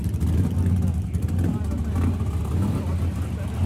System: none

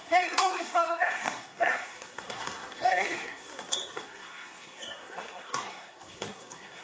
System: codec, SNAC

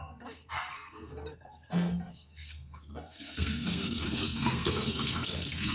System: codec, SNAC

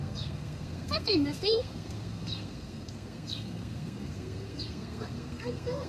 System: codec, SNAC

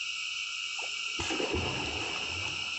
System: none